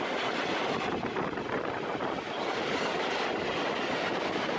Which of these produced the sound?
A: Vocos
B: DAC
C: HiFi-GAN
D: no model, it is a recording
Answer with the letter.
D